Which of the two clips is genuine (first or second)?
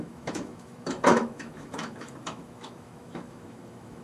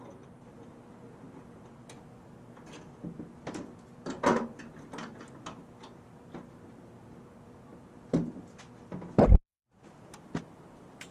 second